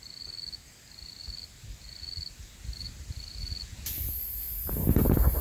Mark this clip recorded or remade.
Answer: recorded